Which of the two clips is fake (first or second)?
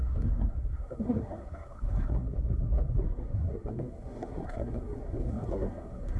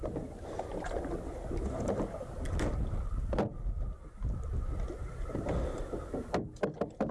first